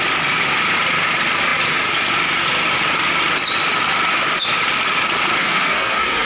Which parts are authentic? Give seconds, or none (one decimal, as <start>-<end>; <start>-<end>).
0.0-5.4